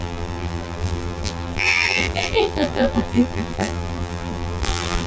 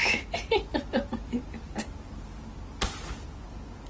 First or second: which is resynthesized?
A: first